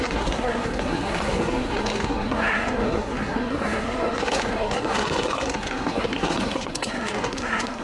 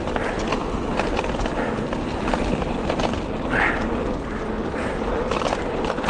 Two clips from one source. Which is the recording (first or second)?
second